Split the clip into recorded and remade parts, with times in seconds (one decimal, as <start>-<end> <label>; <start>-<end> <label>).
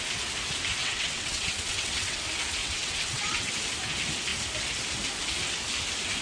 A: 0.0-0.8 recorded; 0.8-2.2 remade; 2.2-2.6 recorded; 2.6-3.5 remade; 3.5-6.2 recorded